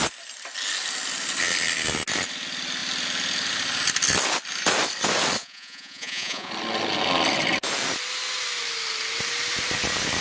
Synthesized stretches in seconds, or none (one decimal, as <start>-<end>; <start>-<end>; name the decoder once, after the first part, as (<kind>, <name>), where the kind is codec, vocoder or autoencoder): 5.4-6.5 (vocoder, Vocos)